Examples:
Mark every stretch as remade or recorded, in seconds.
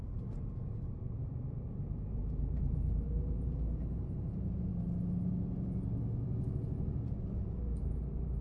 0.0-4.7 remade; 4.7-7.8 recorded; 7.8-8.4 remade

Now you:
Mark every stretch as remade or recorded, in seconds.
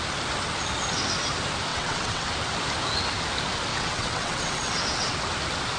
0.0-1.7 recorded; 1.7-2.3 remade; 2.3-3.7 recorded; 3.7-4.8 remade; 4.8-5.8 recorded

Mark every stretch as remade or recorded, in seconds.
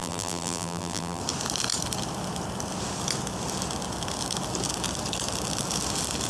0.0-1.2 remade; 1.2-6.3 recorded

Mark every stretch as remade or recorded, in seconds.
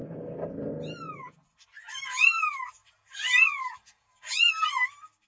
0.0-5.3 recorded